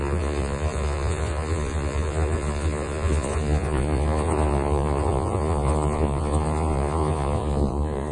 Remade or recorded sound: remade